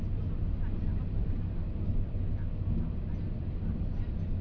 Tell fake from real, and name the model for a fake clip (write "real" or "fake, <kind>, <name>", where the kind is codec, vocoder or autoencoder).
real